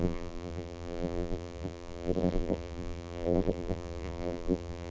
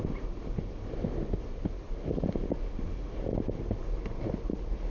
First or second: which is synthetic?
first